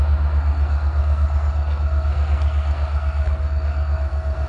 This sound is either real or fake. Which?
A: fake